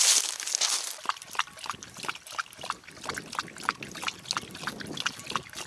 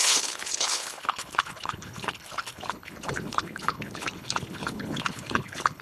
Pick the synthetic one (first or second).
second